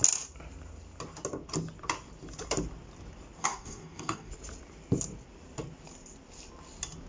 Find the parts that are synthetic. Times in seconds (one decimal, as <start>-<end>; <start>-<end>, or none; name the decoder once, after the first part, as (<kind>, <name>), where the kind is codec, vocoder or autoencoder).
3.4-4.3 (codec, DAC)